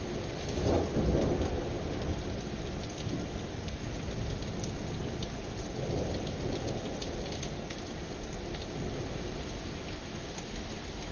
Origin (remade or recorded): recorded